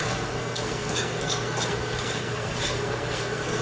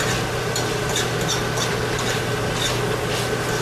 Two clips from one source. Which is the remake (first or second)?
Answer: first